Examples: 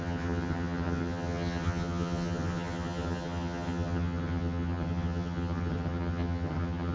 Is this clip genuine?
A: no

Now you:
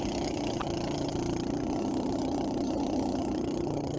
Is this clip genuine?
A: no